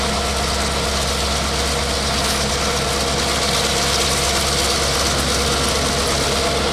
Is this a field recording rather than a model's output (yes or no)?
yes